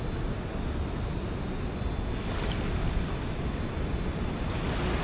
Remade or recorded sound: recorded